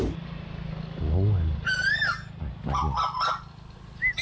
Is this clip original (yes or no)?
yes